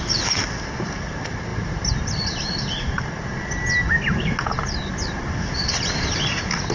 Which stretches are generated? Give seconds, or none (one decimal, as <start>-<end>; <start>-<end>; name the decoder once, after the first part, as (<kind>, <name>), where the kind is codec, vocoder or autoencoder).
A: none